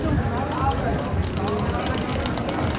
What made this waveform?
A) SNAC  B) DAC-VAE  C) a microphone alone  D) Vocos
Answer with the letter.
C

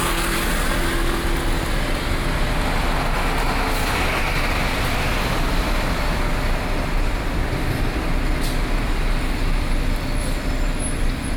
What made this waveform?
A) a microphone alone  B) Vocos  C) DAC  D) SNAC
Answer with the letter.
A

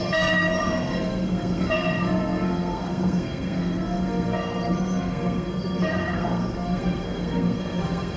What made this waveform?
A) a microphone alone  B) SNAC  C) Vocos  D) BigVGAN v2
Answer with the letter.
B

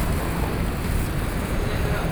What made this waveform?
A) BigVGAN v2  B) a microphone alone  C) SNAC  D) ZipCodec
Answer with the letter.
B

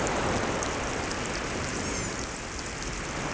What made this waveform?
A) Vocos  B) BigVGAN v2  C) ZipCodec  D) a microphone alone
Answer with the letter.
D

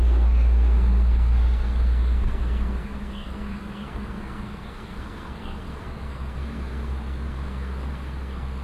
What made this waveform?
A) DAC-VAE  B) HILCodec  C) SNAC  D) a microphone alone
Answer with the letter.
C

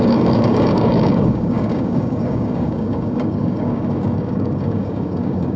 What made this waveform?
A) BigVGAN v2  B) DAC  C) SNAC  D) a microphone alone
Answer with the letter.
B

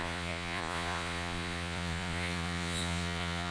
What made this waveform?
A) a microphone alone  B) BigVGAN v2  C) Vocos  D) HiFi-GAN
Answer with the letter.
C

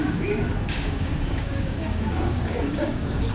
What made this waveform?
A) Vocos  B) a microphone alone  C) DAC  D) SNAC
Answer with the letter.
C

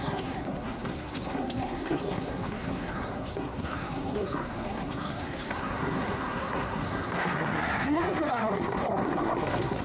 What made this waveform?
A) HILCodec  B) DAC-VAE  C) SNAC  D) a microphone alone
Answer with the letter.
C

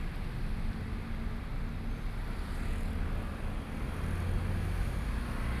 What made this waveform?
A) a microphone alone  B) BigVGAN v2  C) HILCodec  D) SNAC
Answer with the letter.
A